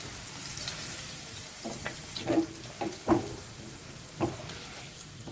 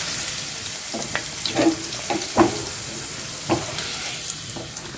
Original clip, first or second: first